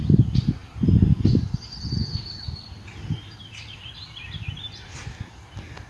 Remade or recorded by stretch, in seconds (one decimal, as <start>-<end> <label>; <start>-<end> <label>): 0.0-5.9 recorded